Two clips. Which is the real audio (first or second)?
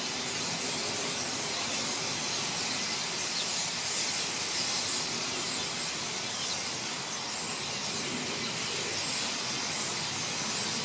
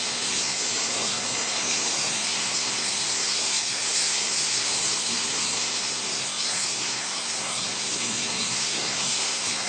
first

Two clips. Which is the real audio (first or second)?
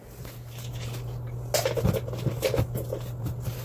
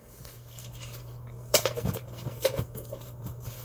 first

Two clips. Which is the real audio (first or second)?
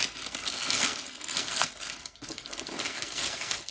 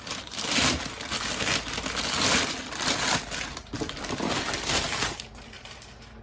second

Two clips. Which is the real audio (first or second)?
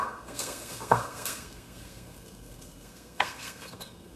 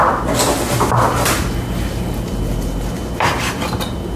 second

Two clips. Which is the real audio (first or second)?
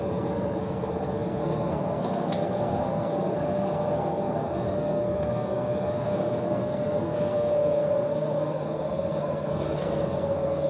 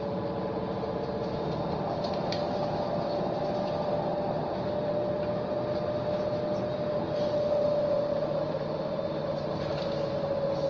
second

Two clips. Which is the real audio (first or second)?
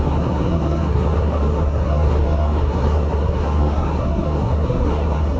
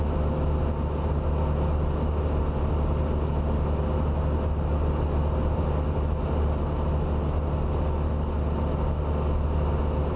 second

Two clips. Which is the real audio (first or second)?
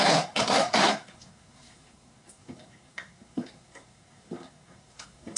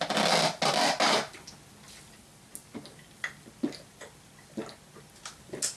second